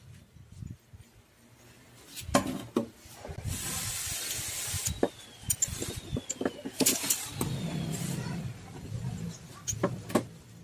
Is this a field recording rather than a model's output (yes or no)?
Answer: yes